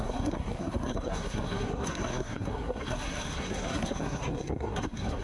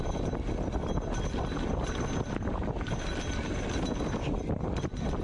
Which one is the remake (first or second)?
first